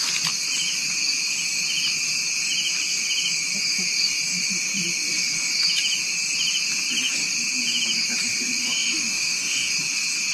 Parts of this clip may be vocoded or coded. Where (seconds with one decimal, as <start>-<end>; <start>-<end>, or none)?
8.6-9.7